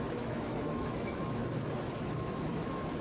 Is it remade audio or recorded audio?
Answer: remade